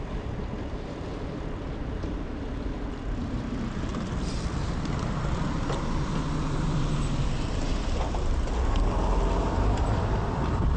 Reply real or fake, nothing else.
fake